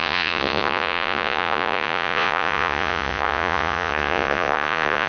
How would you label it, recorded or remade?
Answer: remade